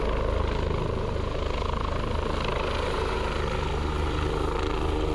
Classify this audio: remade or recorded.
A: recorded